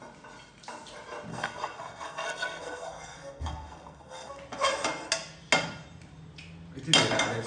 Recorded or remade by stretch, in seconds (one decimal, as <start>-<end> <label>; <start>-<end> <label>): 0.0-1.3 recorded; 1.3-4.4 remade; 4.4-7.5 recorded